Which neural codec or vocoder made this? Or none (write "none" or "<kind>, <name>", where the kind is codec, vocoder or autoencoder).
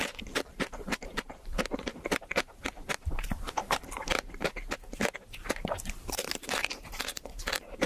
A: vocoder, BigVGAN v2